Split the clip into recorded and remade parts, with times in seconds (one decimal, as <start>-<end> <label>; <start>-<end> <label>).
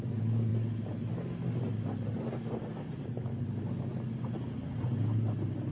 0.0-5.7 recorded